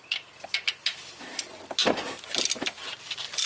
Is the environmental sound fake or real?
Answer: real